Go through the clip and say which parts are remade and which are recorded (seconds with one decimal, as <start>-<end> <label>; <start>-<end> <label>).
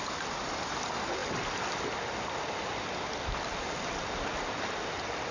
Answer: 0.0-5.3 recorded